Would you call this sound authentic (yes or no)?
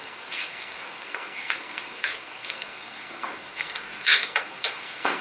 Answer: no